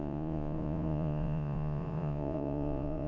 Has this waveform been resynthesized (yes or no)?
yes